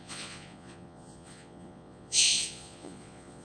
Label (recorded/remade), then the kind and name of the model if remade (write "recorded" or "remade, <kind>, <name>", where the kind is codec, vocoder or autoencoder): remade, vocoder, Vocos